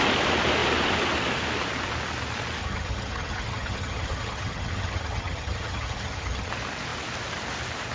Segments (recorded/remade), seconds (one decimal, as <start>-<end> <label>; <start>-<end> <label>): 0.0-2.6 recorded; 2.6-6.5 remade; 6.5-7.9 recorded